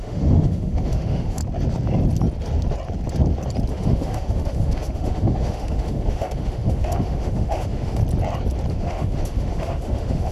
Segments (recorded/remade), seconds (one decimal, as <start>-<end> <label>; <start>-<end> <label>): 0.0-1.4 remade; 1.4-3.7 recorded; 3.7-8.0 remade; 8.0-8.7 recorded; 8.7-10.3 remade